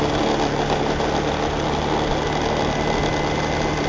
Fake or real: real